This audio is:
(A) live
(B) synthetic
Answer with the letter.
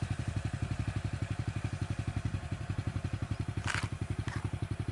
B